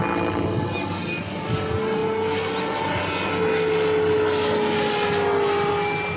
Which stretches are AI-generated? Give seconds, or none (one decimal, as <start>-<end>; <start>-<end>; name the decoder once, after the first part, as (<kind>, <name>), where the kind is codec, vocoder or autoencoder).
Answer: none

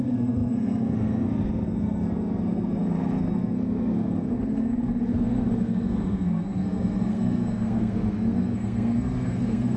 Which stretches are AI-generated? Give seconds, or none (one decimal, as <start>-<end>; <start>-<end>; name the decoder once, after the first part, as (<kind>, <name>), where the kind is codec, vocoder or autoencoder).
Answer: 0.0-9.8 (codec, SNAC)

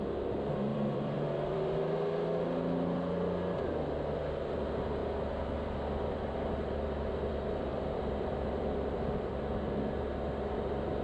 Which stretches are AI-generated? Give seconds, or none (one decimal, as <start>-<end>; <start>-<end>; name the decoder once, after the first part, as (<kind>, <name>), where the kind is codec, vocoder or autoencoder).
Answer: 0.7-1.8 (vocoder, BigVGAN v2); 7.7-9.4